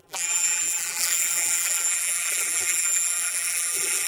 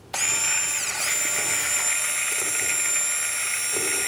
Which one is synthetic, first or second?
first